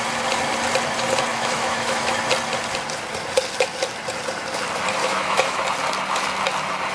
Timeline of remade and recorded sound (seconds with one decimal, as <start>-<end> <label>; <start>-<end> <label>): 0.0-1.3 recorded; 1.3-2.2 remade; 2.2-5.0 recorded; 5.0-5.6 remade; 5.6-6.9 recorded